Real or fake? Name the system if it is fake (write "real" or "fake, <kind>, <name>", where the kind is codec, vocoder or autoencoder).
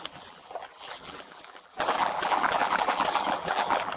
fake, vocoder, BigVGAN v2